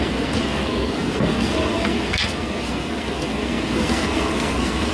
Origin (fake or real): fake